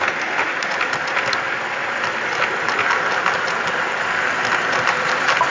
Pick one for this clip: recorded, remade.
recorded